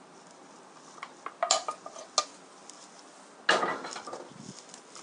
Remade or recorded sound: recorded